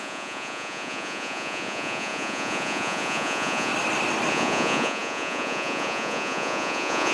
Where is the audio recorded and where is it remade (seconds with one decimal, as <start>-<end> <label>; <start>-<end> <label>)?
0.0-3.7 remade; 3.7-4.3 recorded; 4.3-7.1 remade